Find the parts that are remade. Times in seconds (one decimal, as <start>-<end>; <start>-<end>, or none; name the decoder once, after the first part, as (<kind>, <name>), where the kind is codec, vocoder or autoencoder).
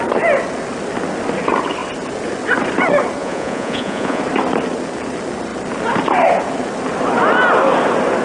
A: 3.2-4.2 (vocoder, Vocos)